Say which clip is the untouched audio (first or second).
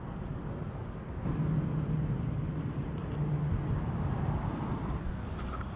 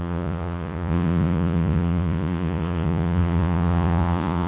first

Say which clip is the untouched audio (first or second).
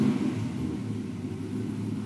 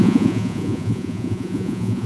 first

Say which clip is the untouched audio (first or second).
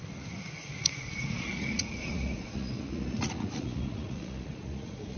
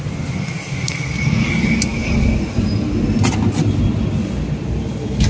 second